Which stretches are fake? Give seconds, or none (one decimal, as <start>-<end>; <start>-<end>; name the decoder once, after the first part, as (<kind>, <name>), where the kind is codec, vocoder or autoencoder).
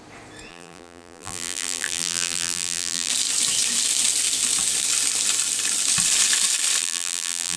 0.5-3.1 (vocoder, BigVGAN v2); 6.8-7.6